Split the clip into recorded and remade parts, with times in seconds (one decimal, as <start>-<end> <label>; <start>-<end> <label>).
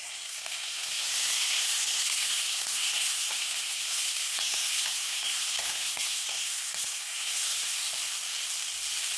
0.0-7.9 remade; 7.9-9.2 recorded